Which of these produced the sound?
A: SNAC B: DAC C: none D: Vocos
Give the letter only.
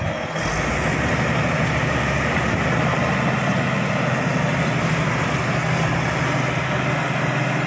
C